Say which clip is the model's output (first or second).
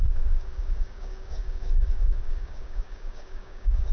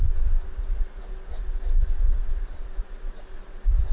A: first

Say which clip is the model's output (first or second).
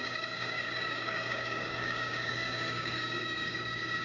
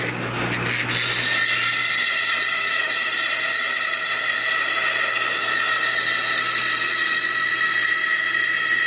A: first